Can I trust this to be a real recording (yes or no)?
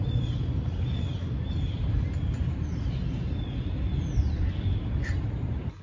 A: yes